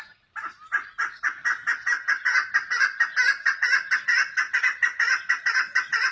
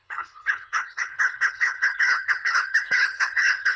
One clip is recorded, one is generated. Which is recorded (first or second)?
first